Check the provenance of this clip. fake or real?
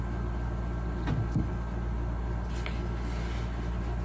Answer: real